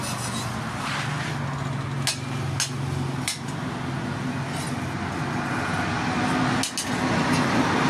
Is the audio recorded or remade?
recorded